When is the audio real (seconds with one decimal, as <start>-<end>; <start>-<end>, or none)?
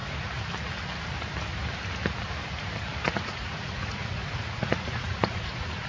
0.0-3.1